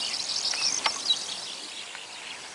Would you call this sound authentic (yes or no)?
yes